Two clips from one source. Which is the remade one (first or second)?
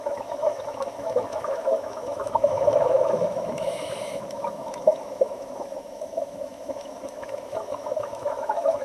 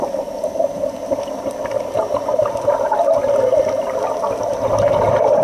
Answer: first